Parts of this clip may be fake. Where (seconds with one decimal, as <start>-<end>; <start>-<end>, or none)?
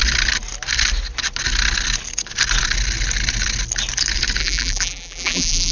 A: 4.4-5.7